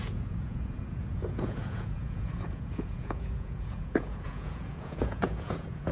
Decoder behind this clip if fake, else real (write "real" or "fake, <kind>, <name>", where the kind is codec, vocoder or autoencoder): fake, vocoder, Vocos